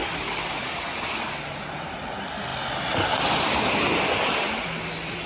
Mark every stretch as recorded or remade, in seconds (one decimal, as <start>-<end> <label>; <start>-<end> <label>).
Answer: 0.0-5.3 recorded